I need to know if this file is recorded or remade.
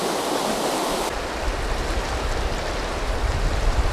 recorded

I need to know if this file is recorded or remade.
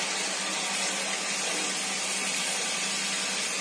recorded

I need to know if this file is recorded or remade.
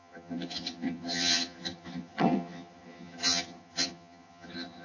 remade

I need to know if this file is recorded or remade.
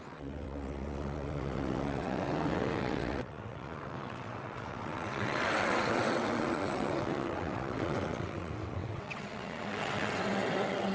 remade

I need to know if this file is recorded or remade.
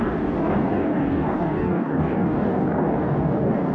remade